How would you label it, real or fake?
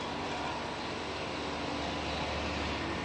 real